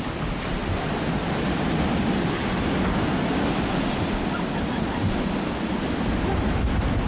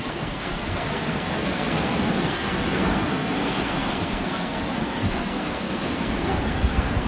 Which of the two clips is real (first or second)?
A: first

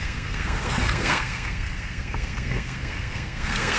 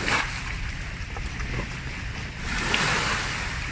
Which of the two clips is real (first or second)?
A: second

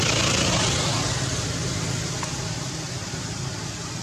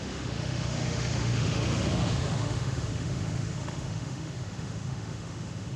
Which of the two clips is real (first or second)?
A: first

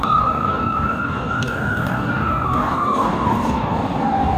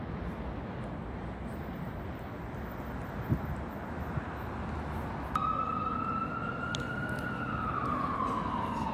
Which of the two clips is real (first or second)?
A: second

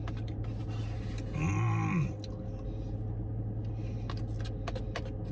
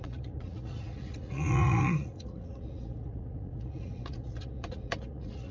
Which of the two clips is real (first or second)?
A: first